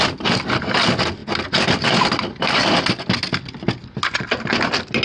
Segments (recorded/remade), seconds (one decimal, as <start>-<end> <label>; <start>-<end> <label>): 0.0-5.0 recorded